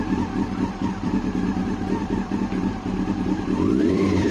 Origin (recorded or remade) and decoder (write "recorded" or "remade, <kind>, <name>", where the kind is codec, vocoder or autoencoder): remade, vocoder, BigVGAN v2